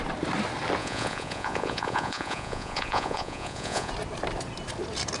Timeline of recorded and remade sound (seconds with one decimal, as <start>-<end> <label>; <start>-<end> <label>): 0.0-0.8 recorded; 0.8-3.9 remade; 3.9-5.2 recorded